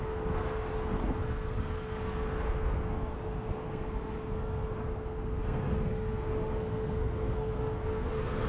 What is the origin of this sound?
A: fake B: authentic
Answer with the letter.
A